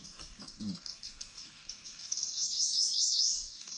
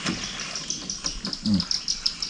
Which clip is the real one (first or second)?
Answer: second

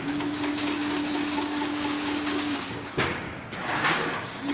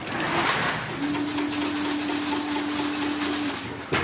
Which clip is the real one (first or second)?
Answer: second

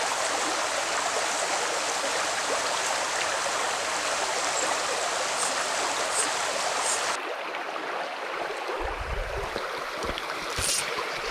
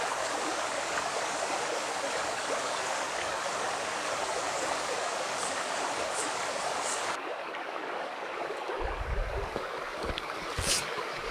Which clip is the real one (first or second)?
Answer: first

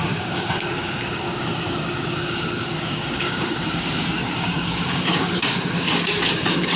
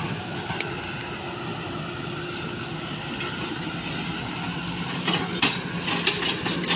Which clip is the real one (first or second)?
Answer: second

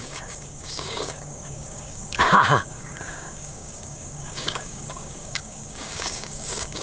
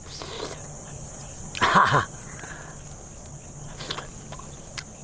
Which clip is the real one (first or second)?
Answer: second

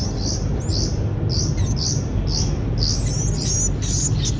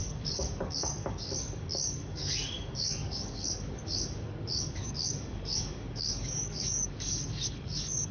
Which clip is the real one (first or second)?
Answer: first